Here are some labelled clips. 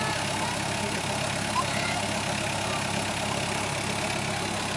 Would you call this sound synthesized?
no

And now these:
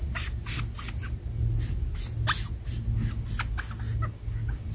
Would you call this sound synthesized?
no